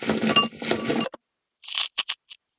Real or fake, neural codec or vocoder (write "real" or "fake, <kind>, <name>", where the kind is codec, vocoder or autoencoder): real